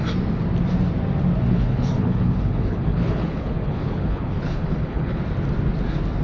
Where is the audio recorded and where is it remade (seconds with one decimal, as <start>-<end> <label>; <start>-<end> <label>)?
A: 0.0-1.5 recorded; 1.5-5.2 remade; 5.2-6.2 recorded